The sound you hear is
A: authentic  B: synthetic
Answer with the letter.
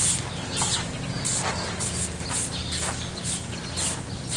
A